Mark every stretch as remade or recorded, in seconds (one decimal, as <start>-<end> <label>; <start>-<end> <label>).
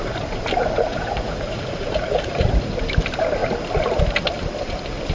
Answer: 0.0-0.9 recorded; 0.9-2.5 remade; 2.5-5.1 recorded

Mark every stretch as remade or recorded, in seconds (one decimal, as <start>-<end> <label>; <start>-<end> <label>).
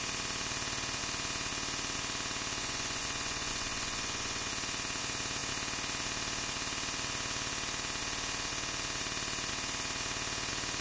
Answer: 0.0-2.6 recorded; 2.6-4.5 remade; 4.5-10.8 recorded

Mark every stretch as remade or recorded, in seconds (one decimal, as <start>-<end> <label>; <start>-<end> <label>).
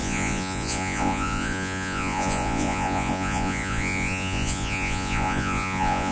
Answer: 0.0-6.1 remade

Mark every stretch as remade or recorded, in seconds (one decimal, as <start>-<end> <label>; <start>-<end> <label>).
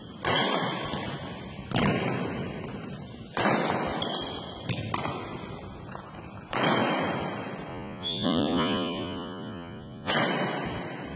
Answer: 0.0-7.7 recorded; 7.7-10.1 remade; 10.1-11.2 recorded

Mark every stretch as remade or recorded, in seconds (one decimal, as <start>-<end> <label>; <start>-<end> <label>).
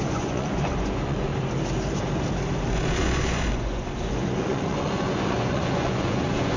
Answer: 0.0-1.3 remade; 1.3-2.7 recorded; 2.7-6.6 remade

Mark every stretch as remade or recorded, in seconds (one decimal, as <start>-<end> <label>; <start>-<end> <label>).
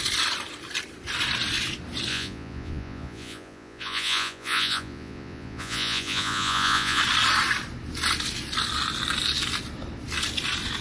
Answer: 0.0-2.1 recorded; 2.1-7.0 remade; 7.0-10.8 recorded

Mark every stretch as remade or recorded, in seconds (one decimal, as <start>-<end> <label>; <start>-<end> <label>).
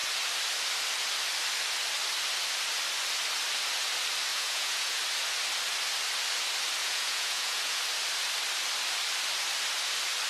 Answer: 0.0-4.3 recorded; 4.3-5.0 remade; 5.0-6.8 recorded; 6.8-7.8 remade; 7.8-10.3 recorded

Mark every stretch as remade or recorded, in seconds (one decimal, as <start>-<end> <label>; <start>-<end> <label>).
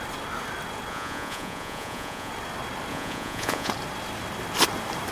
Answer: 0.0-0.9 recorded; 0.9-2.3 remade; 2.3-2.9 recorded; 2.9-3.7 remade; 3.7-5.1 recorded